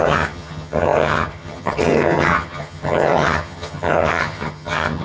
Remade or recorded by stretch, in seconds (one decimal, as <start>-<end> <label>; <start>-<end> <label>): 0.0-5.0 remade